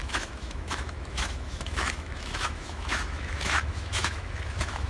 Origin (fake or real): fake